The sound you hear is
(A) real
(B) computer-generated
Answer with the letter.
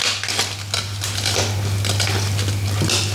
A